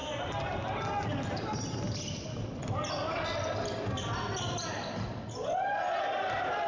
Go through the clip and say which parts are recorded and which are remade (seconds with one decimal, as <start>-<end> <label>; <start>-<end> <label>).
0.0-6.7 recorded